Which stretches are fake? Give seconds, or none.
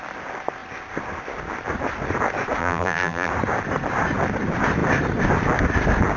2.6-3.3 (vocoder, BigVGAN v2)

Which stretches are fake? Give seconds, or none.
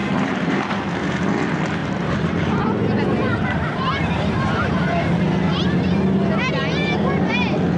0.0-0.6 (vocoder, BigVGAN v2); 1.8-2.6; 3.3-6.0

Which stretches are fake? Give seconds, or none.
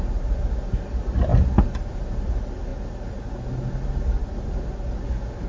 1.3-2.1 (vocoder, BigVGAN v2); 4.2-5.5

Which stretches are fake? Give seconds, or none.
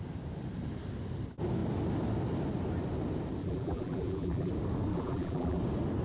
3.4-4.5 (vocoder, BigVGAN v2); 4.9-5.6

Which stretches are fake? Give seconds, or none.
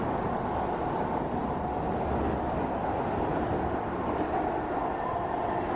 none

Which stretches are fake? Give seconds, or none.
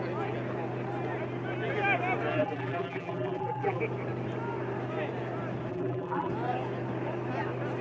2.3-3.8 (vocoder, BigVGAN v2); 5.7-6.3